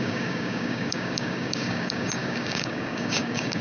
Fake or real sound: fake